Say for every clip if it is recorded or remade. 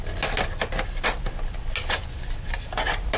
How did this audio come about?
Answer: recorded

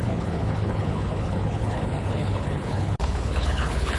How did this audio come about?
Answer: remade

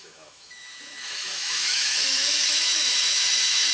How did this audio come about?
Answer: remade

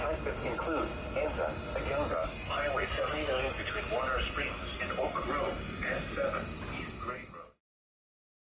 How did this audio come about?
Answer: recorded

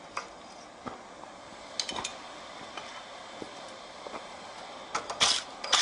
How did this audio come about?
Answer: recorded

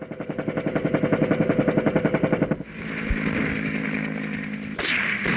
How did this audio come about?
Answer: recorded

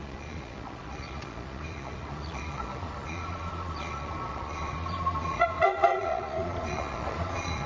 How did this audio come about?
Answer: remade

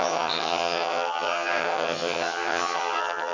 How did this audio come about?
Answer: remade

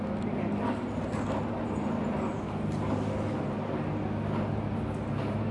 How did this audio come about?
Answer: recorded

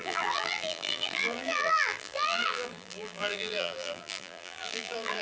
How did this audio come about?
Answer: remade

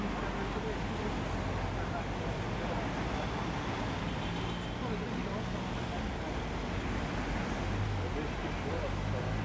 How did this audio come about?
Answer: recorded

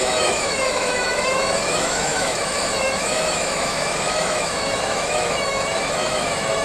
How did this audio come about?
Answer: remade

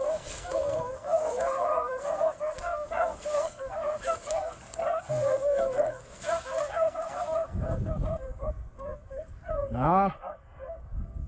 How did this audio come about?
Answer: remade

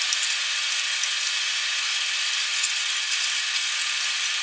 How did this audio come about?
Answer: recorded